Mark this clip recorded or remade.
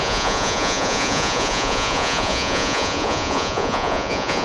remade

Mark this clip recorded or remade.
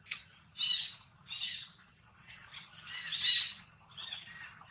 recorded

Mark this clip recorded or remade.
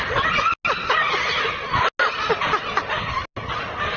recorded